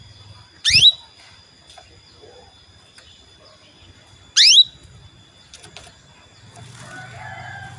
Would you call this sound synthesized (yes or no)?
no